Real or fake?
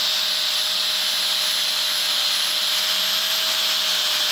real